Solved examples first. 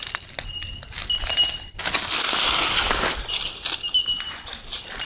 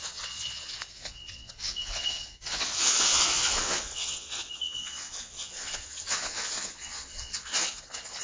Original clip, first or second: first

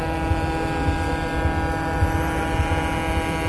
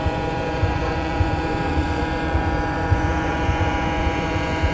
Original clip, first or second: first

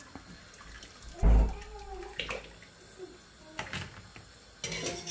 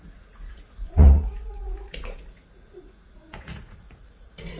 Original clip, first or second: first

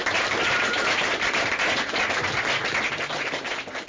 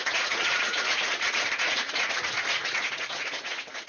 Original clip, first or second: first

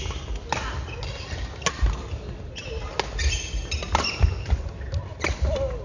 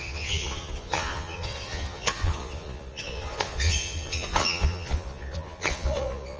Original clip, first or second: first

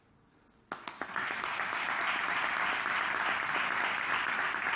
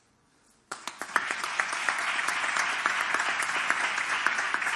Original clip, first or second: first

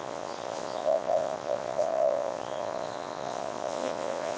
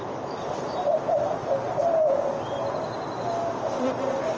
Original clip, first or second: second